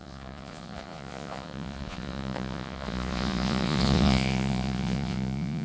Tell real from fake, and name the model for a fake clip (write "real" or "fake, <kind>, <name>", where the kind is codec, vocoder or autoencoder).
fake, vocoder, Vocos